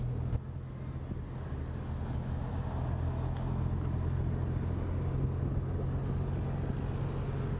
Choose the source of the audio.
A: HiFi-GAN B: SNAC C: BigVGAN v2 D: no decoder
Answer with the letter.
D